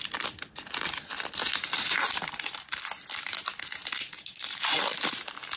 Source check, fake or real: real